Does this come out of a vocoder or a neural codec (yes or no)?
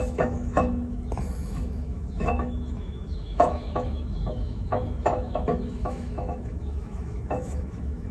yes